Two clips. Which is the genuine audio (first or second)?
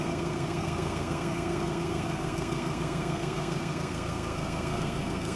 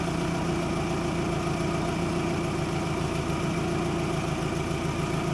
second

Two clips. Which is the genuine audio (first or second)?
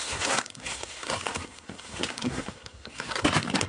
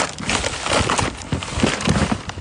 second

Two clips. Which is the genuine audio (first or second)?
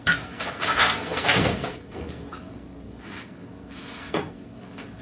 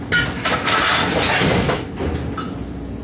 second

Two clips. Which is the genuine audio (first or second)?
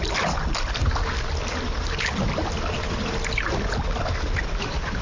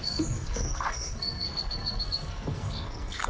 first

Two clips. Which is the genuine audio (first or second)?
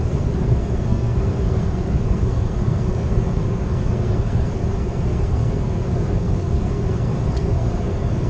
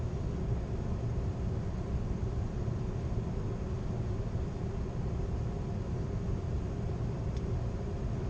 second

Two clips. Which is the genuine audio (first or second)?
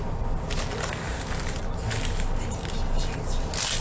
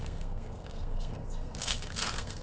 first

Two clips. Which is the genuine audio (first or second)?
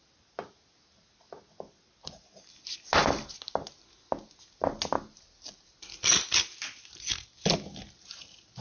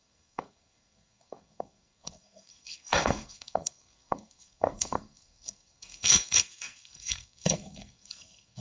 first